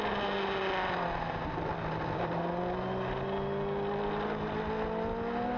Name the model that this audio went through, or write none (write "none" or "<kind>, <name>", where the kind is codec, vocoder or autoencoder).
none